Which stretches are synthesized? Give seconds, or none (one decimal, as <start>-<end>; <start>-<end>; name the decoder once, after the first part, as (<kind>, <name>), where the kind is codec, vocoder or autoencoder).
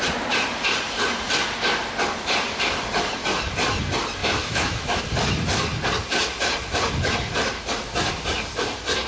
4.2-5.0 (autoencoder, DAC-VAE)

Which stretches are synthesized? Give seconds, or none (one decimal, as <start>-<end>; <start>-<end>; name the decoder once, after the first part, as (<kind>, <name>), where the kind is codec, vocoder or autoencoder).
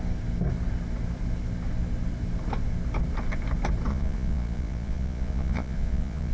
3.9-6.3 (vocoder, Vocos)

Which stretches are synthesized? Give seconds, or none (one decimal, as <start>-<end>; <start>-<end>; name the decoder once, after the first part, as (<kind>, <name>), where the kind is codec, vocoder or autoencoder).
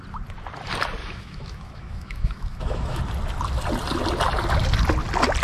1.0-3.0 (autoencoder, DAC-VAE)